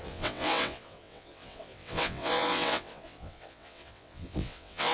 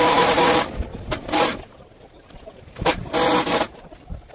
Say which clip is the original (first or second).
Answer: second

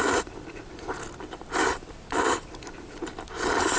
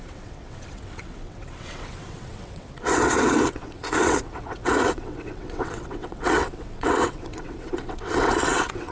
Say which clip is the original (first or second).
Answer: first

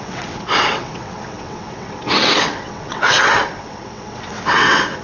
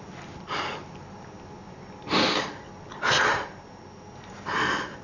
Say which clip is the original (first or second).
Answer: second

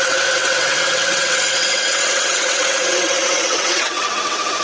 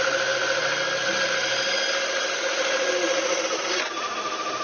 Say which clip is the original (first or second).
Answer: second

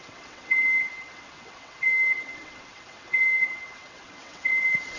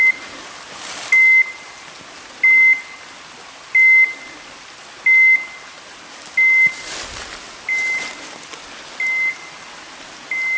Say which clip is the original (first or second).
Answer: second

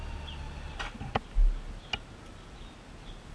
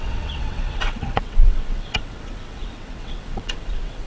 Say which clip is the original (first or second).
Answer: first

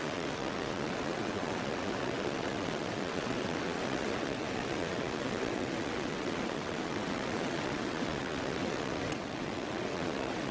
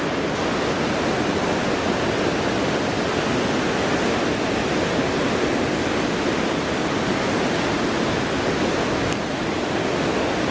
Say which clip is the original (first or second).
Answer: second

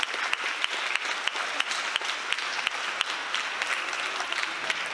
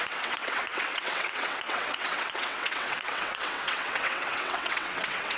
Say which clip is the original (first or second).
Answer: first